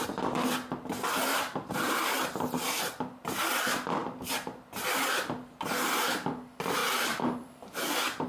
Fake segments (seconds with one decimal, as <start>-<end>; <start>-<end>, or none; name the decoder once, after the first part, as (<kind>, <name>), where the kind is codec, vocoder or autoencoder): 1.3-2.8 (vocoder, BigVGAN v2); 6.8-7.8